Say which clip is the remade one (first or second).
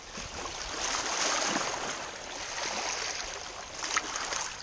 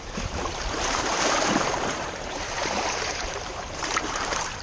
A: second